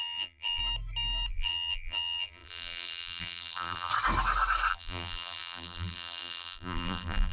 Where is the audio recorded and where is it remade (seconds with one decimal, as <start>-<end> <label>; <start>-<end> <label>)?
0.0-0.6 remade; 0.6-1.3 recorded; 1.3-3.9 remade; 3.9-4.7 recorded; 4.7-7.3 remade